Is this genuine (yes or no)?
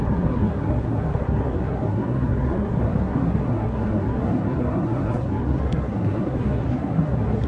no